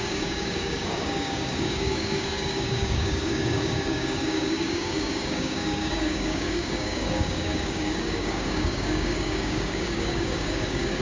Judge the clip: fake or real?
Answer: fake